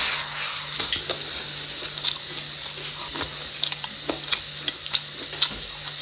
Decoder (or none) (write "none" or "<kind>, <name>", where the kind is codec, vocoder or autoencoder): none